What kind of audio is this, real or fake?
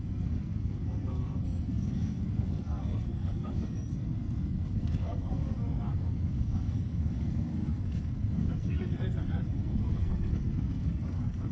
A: fake